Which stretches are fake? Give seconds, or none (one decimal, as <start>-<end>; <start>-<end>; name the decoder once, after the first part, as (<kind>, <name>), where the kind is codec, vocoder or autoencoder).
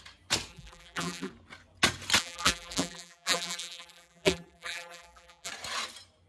0.5-1.3 (vocoder, BigVGAN v2); 2.2-5.5